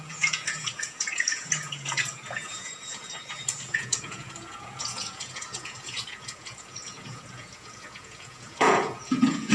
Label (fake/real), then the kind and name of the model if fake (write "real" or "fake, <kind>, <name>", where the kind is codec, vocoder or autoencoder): fake, vocoder, Vocos